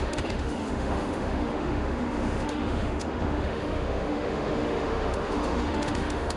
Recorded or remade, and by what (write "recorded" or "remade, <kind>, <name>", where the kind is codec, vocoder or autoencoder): remade, autoencoder, DAC-VAE